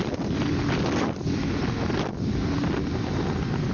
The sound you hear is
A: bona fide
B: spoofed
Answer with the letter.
A